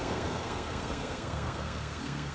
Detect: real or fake fake